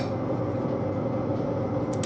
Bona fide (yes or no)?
yes